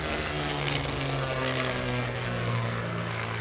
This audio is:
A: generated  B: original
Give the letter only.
A